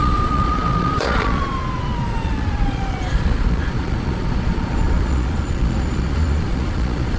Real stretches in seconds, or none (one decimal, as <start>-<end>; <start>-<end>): none